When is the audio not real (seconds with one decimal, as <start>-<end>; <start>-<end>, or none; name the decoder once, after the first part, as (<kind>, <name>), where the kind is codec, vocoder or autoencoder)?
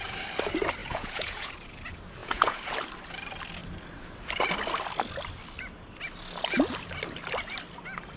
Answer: 0.8-1.5 (vocoder, Vocos); 2.2-2.7